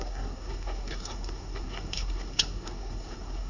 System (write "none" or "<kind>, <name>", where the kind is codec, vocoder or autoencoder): codec, SNAC